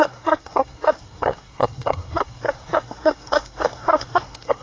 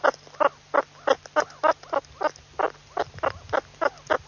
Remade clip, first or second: first